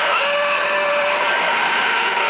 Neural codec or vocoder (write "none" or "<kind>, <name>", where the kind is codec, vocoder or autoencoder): autoencoder, DAC-VAE